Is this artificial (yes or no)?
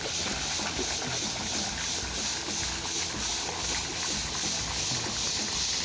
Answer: no